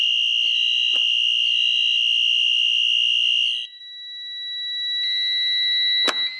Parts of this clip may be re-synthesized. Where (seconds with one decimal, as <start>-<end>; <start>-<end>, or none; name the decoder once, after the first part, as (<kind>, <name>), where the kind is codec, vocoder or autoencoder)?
0.0-3.8 (vocoder, BigVGAN v2)